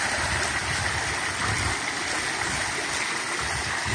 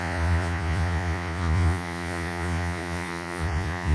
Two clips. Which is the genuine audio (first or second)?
first